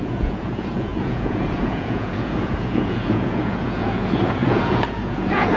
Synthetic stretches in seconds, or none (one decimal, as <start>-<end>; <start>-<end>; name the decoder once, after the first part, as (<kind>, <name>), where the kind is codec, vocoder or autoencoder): 0.0-5.6 (vocoder, Vocos)